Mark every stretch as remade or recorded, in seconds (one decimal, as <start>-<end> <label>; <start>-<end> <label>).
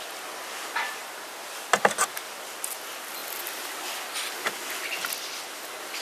0.0-1.0 recorded; 1.0-1.7 remade; 1.7-2.1 recorded; 2.1-2.8 remade; 2.8-3.2 recorded; 3.2-3.8 remade; 3.8-6.0 recorded